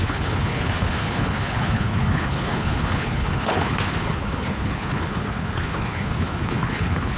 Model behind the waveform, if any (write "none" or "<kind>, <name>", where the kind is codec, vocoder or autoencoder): codec, HILCodec